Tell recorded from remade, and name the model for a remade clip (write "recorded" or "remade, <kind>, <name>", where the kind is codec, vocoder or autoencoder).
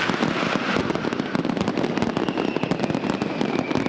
recorded